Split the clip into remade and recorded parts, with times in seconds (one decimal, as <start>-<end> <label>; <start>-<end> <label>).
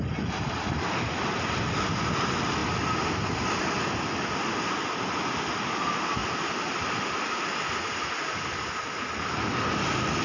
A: 0.0-10.2 recorded